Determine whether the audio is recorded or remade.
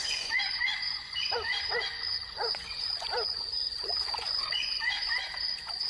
remade